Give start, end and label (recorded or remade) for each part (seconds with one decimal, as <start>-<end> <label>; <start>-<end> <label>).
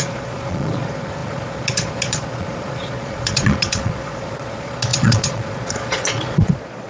0.0-6.9 remade